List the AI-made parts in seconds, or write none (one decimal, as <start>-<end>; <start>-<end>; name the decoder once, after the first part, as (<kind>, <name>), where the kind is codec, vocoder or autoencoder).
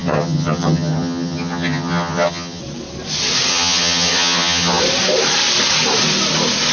0.0-2.6 (vocoder, HiFi-GAN); 3.5-4.8